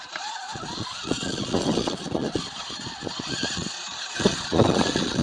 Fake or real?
fake